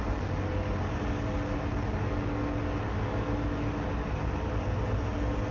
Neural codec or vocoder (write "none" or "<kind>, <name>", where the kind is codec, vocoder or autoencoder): none